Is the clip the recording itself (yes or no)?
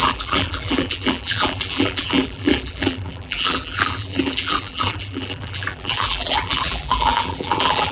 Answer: no